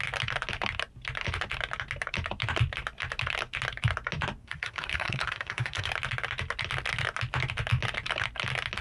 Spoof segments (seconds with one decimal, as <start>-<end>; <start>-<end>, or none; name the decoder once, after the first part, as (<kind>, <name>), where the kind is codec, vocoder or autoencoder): 4.4-5.9 (codec, SNAC)